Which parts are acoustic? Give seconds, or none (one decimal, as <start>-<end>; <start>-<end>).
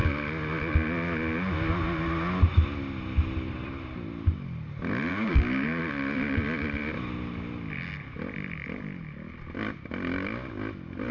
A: 0.0-5.1; 5.8-11.1